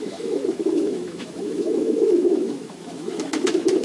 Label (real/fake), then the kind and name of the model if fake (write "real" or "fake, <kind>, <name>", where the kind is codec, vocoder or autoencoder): fake, autoencoder, DAC-VAE